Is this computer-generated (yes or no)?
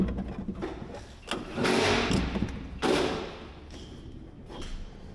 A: no